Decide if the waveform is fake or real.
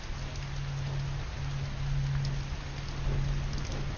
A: real